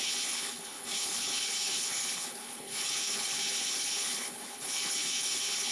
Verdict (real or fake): fake